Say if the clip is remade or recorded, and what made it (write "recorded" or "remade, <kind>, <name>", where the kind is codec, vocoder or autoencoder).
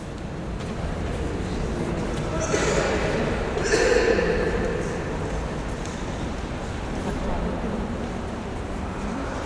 recorded